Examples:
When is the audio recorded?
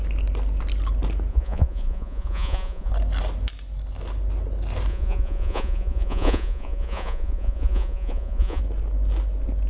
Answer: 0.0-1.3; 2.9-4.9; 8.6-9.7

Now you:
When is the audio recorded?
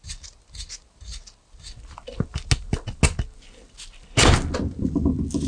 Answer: 0.0-5.5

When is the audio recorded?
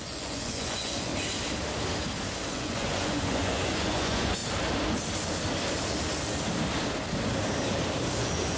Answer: 1.1-2.5; 4.4-8.2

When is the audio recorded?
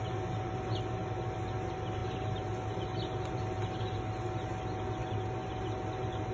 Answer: 0.0-6.3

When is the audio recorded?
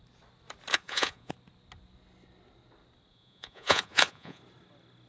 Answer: 0.0-0.7; 1.3-3.1; 4.4-5.1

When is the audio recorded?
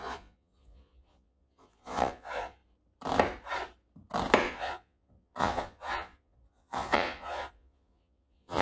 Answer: 2.6-4.4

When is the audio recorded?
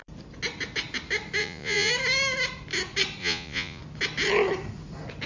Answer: 0.0-1.4; 1.9-3.2; 3.8-5.3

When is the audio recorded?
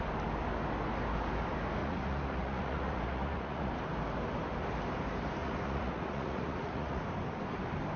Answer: 0.0-1.8; 3.7-5.4; 7.0-8.0